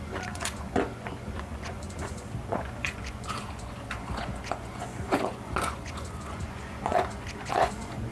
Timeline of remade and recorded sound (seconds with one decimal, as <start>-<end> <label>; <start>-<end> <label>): 0.0-8.1 remade